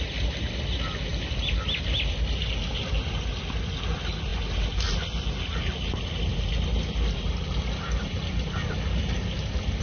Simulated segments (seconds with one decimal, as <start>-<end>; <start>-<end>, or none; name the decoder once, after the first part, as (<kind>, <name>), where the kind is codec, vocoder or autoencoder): none